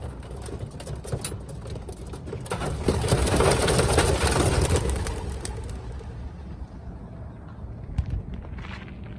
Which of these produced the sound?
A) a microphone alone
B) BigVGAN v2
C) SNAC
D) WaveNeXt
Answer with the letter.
A